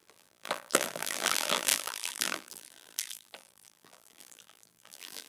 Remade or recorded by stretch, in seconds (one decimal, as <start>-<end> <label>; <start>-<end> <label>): 0.0-5.3 remade